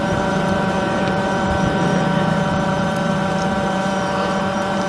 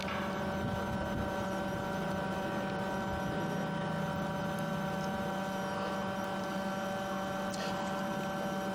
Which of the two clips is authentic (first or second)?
second